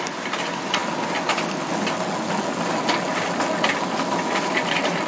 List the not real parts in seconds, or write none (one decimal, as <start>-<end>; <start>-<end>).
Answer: 0.0-0.8; 3.9-5.1